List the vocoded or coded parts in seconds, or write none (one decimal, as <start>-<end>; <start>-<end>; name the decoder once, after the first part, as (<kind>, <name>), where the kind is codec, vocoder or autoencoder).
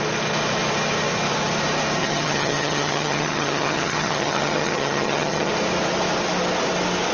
2.0-5.5 (vocoder, HiFi-GAN)